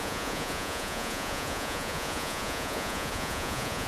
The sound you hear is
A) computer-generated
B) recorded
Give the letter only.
A